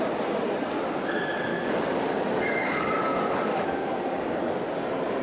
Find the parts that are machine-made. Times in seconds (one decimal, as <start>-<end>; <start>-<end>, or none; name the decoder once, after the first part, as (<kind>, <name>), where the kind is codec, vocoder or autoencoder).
1.5-4.6 (codec, DAC)